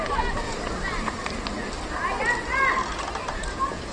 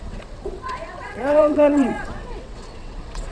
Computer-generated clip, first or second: second